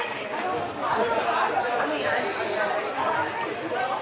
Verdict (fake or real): real